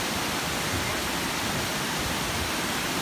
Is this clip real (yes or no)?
yes